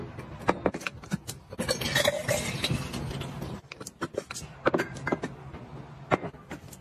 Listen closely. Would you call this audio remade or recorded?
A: recorded